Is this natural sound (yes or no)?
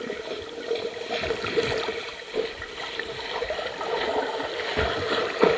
yes